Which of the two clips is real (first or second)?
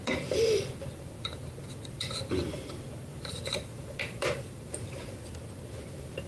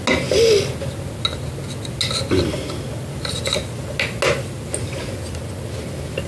second